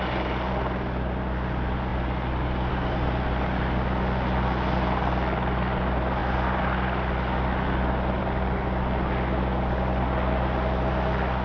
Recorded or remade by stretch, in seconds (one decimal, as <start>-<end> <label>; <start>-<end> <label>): 0.0-11.4 recorded